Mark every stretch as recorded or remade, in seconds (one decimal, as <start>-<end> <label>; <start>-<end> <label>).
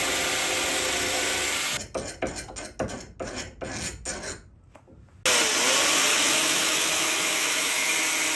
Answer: 0.0-6.1 recorded; 6.1-7.9 remade; 7.9-8.4 recorded